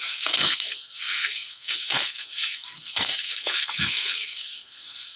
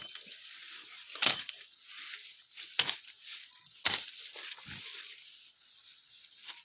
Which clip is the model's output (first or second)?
first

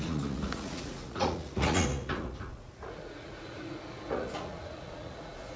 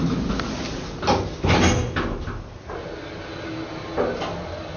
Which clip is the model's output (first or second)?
first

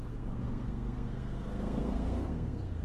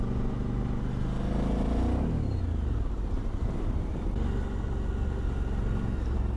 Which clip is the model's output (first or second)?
first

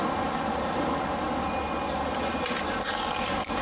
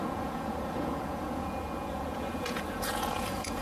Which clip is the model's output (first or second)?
second